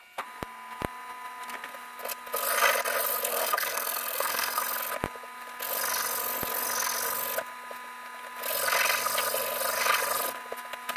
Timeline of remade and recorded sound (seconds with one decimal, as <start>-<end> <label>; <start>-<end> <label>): 0.0-3.3 recorded; 3.3-4.6 remade; 4.6-11.0 recorded